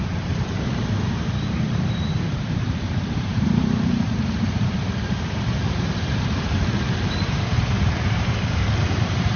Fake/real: fake